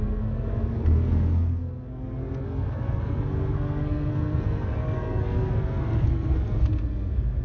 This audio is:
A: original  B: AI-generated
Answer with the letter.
B